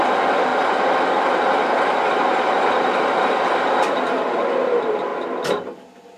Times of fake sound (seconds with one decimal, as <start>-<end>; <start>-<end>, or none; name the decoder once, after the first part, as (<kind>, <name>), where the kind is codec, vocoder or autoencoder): none